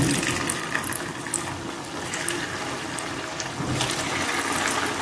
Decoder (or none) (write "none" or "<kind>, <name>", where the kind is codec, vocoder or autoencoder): none